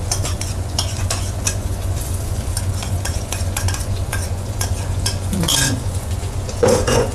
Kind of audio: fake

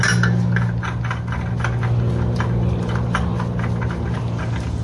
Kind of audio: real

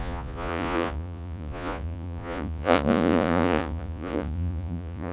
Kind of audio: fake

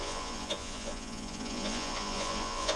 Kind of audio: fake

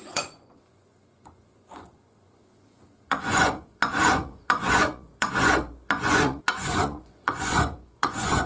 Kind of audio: fake